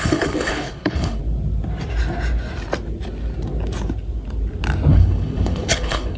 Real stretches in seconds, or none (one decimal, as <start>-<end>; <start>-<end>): 1.2-4.9